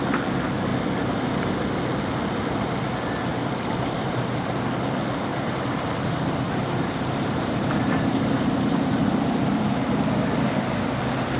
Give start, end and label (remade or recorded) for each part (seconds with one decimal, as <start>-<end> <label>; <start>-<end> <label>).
0.0-3.3 recorded; 3.3-4.5 remade; 4.5-5.3 recorded; 5.3-9.9 remade; 9.9-11.4 recorded